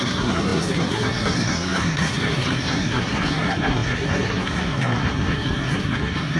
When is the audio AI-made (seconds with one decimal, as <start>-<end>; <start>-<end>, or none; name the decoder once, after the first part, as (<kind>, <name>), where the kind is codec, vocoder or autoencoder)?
0.0-6.4 (codec, SNAC)